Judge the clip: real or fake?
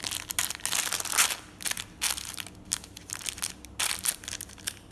real